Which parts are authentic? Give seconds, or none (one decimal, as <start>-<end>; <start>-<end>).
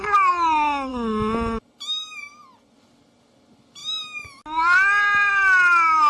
0.0-6.1